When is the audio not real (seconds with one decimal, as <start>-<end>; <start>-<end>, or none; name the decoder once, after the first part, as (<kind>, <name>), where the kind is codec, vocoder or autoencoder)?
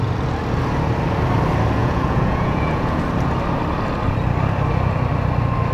1.8-3.0 (vocoder, Vocos)